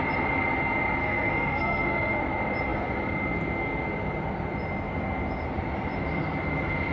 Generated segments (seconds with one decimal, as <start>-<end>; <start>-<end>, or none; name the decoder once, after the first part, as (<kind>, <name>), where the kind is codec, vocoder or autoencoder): 1.0-2.2 (codec, SNAC)